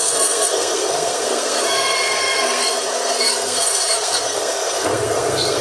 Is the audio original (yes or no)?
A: no